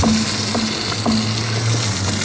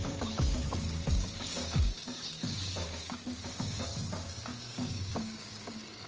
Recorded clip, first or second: first